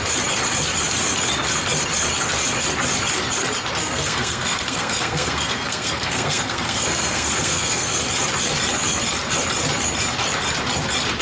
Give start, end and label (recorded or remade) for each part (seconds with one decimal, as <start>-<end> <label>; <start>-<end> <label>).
0.0-3.8 recorded; 3.8-7.9 remade; 7.9-11.2 recorded